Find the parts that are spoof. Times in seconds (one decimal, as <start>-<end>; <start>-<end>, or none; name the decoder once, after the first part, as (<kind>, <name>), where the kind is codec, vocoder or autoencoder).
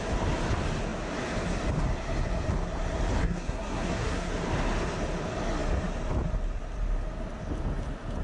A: 3.2-4.3 (codec, SNAC)